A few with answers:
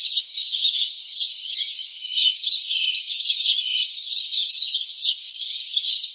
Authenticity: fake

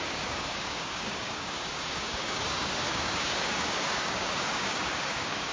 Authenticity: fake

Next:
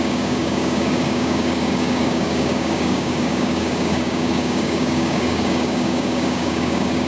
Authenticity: fake